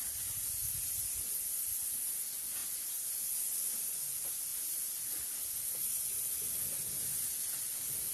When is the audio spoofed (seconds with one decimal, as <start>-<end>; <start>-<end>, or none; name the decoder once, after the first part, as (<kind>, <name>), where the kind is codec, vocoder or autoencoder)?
none